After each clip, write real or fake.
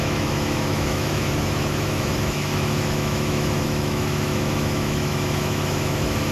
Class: fake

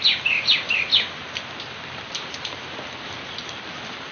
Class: real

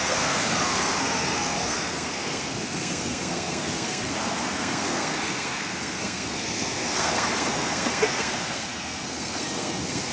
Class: fake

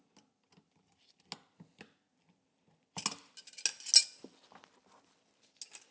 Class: real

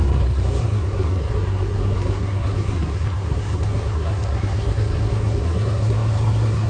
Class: fake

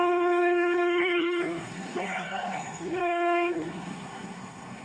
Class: fake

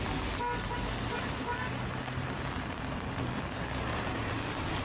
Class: real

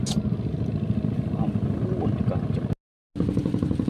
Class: real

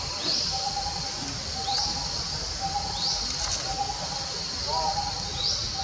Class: real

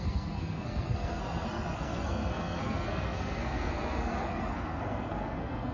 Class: fake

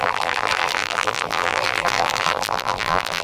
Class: fake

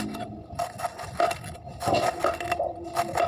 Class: real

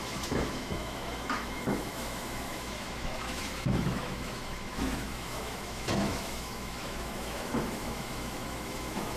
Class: fake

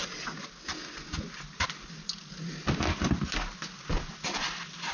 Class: real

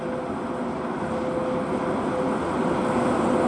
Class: real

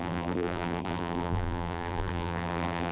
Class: fake